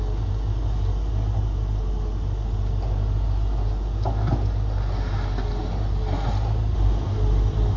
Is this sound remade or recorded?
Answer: recorded